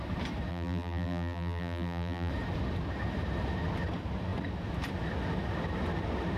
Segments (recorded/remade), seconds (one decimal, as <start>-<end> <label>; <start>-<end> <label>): 0.0-0.5 recorded; 0.5-2.3 remade; 2.3-6.4 recorded